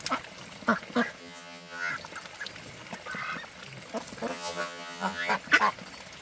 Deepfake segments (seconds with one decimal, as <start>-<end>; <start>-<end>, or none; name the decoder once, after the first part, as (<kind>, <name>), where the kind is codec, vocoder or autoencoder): 1.2-1.9 (vocoder, HiFi-GAN); 4.3-5.3